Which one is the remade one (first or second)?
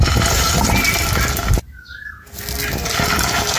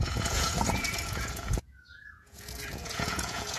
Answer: second